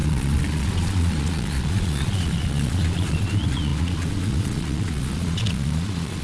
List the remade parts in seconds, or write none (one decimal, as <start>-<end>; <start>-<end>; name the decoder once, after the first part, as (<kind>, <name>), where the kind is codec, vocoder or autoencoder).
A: 0.0-6.2 (vocoder, Vocos)